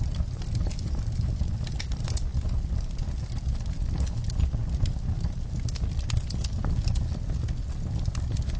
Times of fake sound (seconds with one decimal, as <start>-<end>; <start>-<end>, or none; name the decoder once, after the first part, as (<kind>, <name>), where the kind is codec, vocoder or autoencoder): none